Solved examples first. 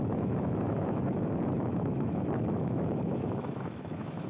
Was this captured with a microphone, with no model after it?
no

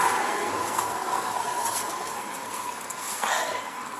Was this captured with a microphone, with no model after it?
no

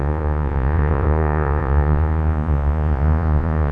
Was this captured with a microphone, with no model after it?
no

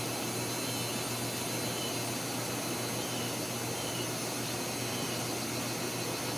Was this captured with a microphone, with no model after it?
yes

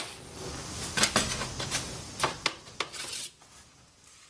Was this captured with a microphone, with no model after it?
yes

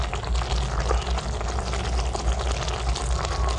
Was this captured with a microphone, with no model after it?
yes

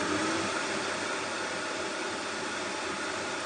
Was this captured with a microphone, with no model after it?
yes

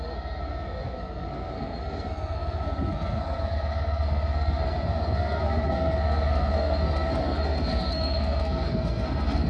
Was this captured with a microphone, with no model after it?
no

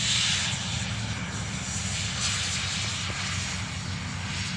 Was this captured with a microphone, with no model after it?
yes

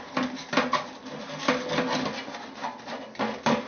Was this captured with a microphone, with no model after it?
yes